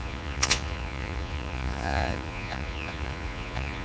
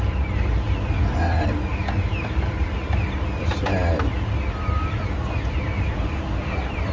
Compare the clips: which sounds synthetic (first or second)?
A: first